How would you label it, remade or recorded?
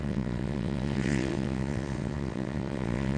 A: remade